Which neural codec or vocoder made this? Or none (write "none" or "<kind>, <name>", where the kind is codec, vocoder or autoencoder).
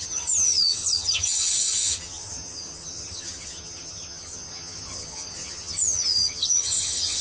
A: vocoder, HiFi-GAN